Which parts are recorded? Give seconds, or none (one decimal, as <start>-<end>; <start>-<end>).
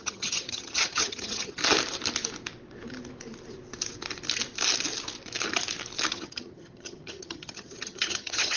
1.6-6.1